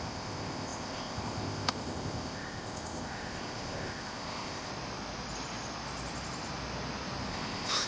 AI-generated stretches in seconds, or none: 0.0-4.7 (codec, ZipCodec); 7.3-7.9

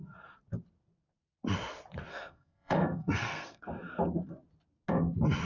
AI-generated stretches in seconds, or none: 2.1-3.6 (codec, SNAC)